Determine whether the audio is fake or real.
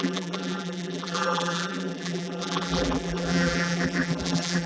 fake